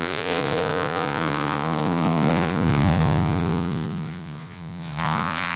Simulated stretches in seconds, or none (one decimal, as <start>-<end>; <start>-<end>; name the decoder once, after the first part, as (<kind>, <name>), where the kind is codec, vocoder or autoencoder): 0.0-5.6 (vocoder, Vocos)